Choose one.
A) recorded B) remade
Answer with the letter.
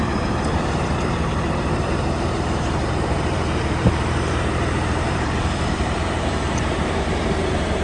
B